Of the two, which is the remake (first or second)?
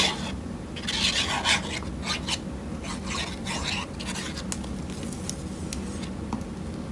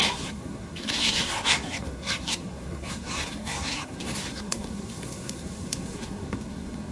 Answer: second